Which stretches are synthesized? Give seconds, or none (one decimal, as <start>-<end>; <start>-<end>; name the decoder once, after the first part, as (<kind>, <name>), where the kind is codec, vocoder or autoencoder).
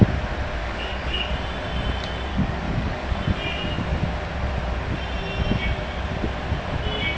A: 0.6-1.3 (codec, DAC); 2.3-3.1